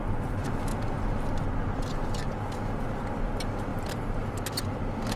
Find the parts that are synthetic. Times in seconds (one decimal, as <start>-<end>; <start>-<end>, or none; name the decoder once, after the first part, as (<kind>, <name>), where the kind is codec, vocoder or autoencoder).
3.7-5.2 (vocoder, BigVGAN v2)